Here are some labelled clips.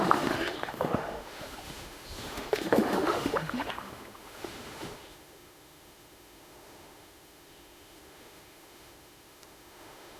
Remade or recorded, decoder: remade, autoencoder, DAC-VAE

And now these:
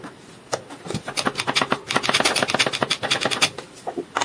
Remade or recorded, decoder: recorded